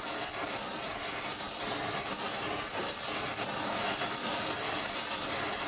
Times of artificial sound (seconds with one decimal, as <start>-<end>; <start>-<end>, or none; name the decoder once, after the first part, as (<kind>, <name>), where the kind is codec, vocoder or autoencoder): none